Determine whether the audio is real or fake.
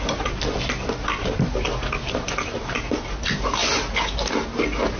real